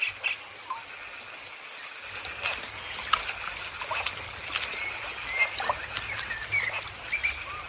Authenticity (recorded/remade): recorded